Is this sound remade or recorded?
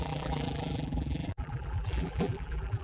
remade